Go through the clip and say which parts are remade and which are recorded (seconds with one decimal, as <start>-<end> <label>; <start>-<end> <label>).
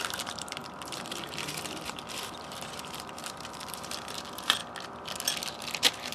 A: 0.0-4.6 remade; 4.6-5.4 recorded; 5.4-6.1 remade